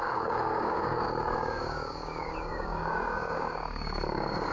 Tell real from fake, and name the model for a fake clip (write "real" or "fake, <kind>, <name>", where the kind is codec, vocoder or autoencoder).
fake, codec, DAC